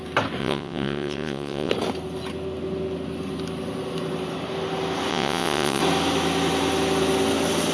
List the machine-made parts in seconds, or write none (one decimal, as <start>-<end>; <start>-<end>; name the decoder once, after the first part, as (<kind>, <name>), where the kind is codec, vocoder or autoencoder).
0.4-1.7 (vocoder, WaveNeXt); 5.1-5.8